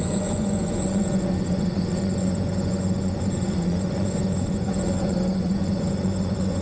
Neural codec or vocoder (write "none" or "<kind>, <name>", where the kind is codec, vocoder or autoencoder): vocoder, Vocos